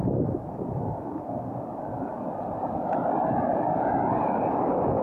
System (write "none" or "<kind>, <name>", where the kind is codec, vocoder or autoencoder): none